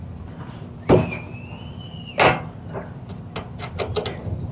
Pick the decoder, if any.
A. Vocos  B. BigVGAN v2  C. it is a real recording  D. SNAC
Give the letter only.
C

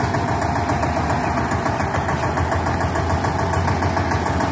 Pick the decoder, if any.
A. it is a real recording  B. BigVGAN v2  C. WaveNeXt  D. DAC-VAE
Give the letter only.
A